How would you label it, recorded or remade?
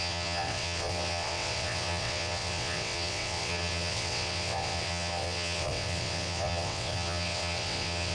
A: remade